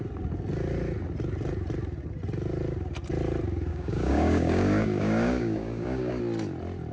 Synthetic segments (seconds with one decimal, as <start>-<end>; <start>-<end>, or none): 3.7-6.2